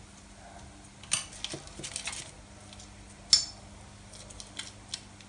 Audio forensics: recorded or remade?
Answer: recorded